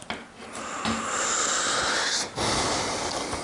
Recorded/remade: recorded